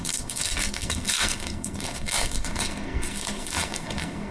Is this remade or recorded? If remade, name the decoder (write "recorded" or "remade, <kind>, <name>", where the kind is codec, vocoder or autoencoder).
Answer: remade, codec, SNAC